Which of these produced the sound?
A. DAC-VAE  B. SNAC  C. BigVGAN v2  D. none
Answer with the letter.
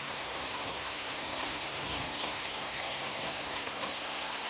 B